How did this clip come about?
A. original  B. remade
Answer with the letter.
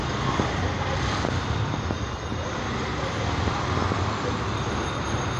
A